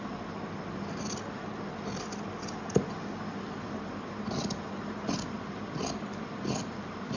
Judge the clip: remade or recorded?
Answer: recorded